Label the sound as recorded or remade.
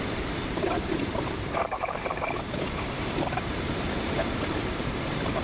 remade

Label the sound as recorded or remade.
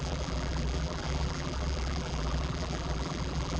remade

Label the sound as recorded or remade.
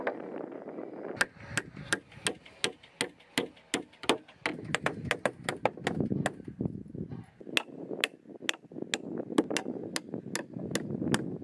recorded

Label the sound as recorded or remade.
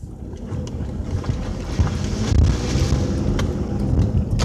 recorded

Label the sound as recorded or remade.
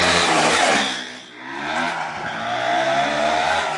remade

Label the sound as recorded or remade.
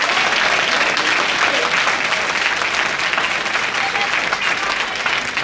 recorded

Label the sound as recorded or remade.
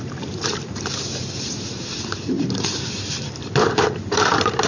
remade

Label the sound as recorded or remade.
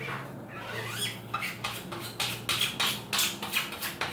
recorded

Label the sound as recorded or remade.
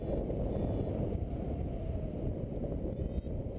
remade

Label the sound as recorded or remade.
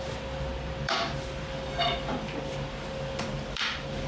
remade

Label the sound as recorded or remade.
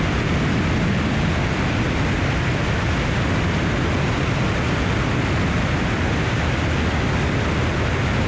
recorded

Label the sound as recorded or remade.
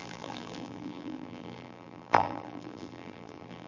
remade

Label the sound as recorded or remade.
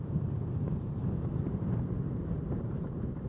remade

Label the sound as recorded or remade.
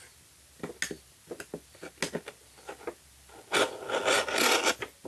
recorded